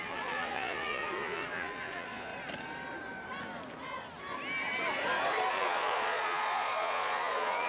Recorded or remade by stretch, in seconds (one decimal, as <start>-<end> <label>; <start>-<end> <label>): 0.0-2.3 remade; 2.3-5.5 recorded; 5.5-7.7 remade